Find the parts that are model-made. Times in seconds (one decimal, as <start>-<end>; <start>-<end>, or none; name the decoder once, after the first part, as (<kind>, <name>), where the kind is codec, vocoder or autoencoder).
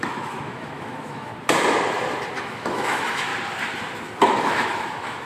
0.0-1.3 (autoencoder, DAC-VAE); 2.4-3.3; 4.4-5.3